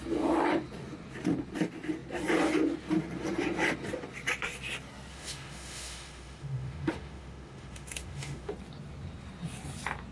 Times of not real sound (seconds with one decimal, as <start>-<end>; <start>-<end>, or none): 5.1-8.5